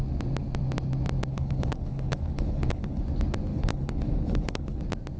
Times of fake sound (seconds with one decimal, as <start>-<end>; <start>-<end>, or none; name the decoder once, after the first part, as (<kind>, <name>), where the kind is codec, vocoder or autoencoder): 1.3-3.0 (codec, HILCodec); 3.5-4.8